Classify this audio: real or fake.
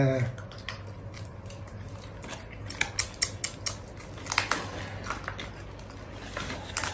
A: real